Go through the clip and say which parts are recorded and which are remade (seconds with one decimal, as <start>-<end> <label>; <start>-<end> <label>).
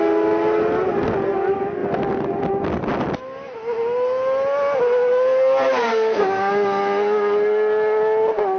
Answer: 0.0-5.9 recorded; 5.9-6.5 remade; 6.5-8.6 recorded